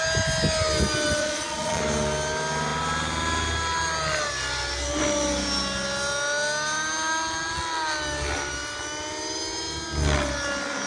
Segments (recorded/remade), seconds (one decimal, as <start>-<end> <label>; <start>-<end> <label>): 0.0-1.2 recorded; 1.2-1.8 remade; 1.8-10.9 recorded